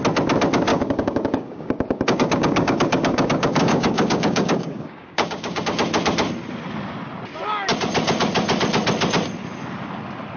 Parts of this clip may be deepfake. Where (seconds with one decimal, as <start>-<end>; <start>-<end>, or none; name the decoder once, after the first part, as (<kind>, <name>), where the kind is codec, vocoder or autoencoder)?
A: 0.7-5.6 (codec, DAC)